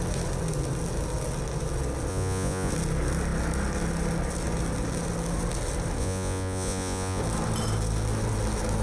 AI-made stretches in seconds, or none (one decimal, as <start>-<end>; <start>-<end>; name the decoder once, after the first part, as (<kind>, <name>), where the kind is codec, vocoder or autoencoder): 2.1-2.7 (vocoder, Vocos); 6.0-7.2

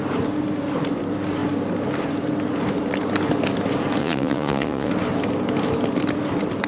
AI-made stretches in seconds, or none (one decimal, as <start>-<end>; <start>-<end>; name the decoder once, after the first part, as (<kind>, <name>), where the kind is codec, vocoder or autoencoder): 4.0-4.9 (vocoder, Vocos)

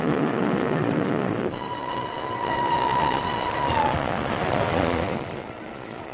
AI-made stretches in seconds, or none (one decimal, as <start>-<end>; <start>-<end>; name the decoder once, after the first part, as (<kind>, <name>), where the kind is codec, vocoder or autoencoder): 0.0-6.1 (vocoder, Vocos)

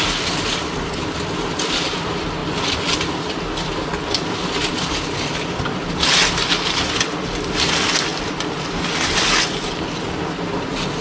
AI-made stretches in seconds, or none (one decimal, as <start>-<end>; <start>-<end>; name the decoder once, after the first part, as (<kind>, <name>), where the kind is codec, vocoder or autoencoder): none